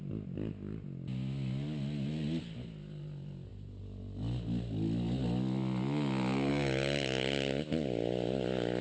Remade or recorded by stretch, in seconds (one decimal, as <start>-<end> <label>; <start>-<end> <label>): 0.0-8.8 recorded